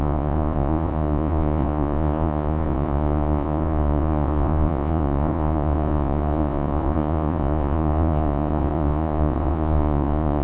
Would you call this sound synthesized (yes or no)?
yes